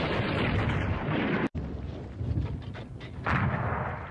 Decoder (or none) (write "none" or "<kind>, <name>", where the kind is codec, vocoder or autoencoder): none